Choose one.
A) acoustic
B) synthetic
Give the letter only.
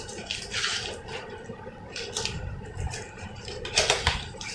B